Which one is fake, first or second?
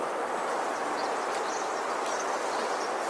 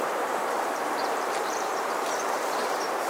second